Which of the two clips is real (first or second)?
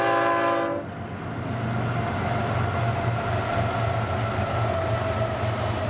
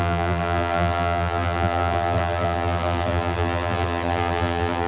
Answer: first